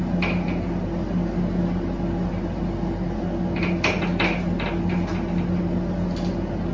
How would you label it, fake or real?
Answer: real